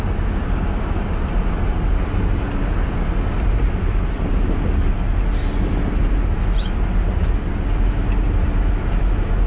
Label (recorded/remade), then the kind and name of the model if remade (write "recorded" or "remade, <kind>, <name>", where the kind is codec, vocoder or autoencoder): recorded